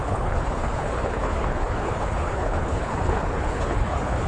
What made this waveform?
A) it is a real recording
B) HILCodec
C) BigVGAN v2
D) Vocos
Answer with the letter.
B